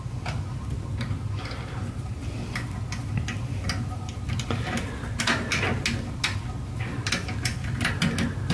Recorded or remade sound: recorded